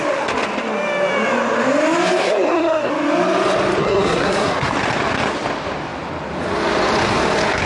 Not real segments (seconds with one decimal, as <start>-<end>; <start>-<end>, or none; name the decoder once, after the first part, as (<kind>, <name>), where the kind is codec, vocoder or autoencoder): 2.2-2.9 (codec, SNAC); 3.8-4.7